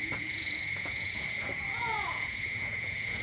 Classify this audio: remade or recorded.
remade